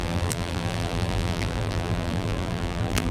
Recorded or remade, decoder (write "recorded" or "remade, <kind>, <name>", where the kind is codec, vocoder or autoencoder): remade, vocoder, BigVGAN v2